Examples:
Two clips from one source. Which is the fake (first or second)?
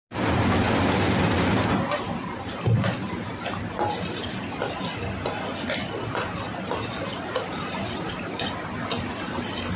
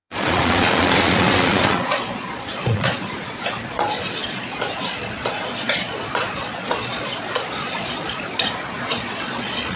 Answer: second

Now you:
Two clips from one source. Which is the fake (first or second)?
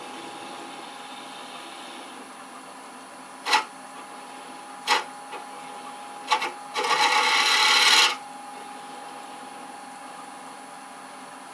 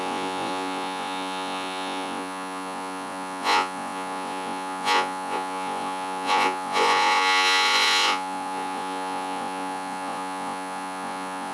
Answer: second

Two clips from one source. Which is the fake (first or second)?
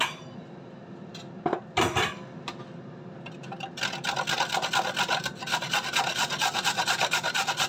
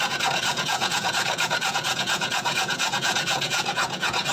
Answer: second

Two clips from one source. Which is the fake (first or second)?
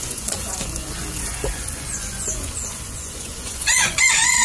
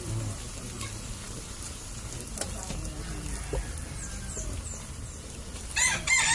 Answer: first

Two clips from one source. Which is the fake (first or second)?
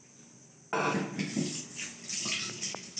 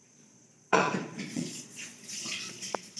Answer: second